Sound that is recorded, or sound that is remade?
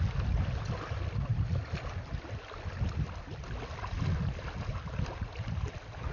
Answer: recorded